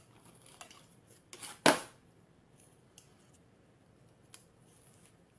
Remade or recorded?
recorded